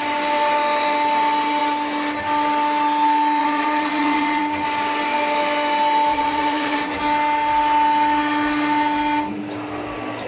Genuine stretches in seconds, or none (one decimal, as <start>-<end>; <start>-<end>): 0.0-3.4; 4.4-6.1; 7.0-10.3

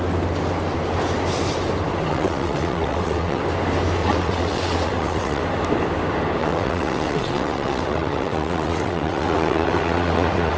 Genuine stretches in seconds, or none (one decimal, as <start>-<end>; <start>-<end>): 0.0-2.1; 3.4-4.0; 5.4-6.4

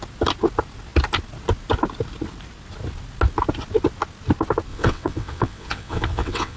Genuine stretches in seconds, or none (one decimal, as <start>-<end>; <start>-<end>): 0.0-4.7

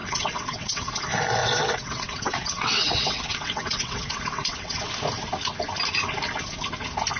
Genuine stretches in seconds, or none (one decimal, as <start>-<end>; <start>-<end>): 0.9-1.4; 4.9-7.2

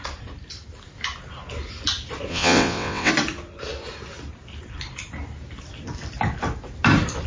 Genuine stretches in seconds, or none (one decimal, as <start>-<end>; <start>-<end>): 0.0-2.3; 3.1-7.3

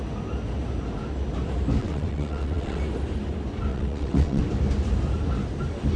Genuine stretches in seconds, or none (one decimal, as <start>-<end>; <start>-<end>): 0.0-1.8; 2.8-3.7; 4.4-6.0

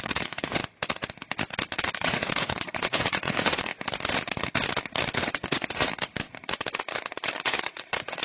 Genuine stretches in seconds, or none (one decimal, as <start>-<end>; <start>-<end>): 0.6-1.9; 3.7-5.2; 5.9-7.4